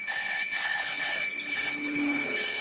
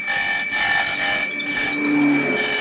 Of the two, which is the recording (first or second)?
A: second